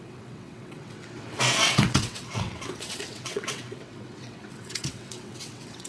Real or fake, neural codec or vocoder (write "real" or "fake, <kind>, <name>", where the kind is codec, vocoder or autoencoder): fake, vocoder, WaveNeXt